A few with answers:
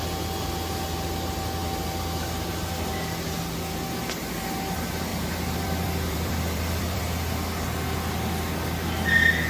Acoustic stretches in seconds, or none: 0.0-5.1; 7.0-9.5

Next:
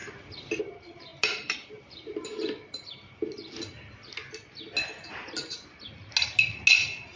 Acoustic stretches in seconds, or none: 0.0-0.6; 3.4-7.2

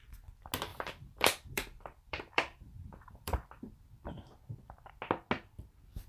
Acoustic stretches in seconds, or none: 0.0-0.7; 3.8-6.1

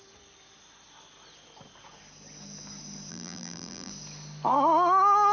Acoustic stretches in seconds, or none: 0.0-3.1; 3.9-5.3

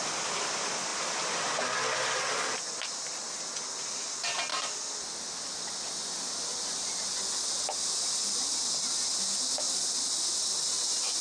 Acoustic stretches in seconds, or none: 0.0-11.2